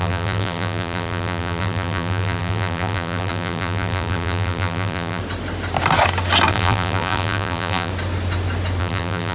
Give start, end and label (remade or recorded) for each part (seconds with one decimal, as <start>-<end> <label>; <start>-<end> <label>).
0.0-5.2 remade; 5.2-6.5 recorded; 6.5-7.9 remade; 7.9-8.8 recorded; 8.8-9.3 remade